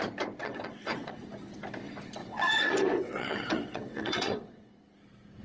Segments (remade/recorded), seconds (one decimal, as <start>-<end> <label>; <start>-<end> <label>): 0.0-0.4 recorded; 0.4-1.2 remade; 1.2-2.2 recorded; 2.2-4.7 remade; 4.7-5.4 recorded